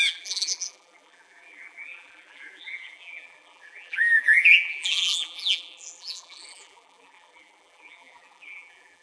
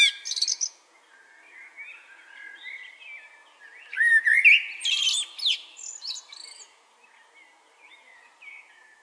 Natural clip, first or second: second